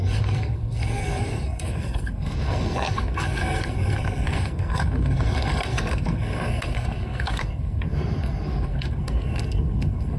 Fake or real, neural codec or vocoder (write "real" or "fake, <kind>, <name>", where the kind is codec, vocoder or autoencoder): fake, codec, SNAC